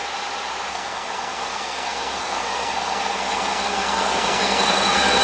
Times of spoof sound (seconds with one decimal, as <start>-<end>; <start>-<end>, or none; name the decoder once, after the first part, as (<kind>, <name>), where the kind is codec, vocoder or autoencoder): 0.7-5.2 (codec, SNAC)